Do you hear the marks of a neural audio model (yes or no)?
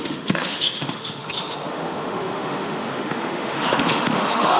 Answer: yes